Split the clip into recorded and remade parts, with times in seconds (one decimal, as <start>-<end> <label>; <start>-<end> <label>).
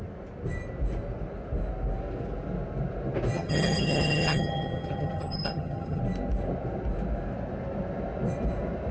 0.0-3.3 recorded; 3.3-6.0 remade; 6.0-8.9 recorded